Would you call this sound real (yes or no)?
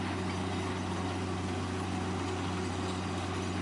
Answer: yes